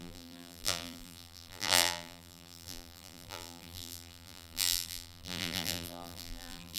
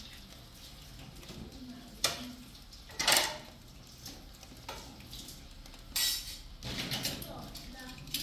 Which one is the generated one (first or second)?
first